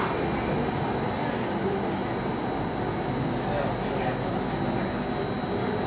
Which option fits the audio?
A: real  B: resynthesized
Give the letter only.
A